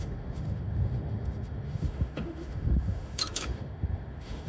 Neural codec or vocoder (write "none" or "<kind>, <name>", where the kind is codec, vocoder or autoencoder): autoencoder, DAC-VAE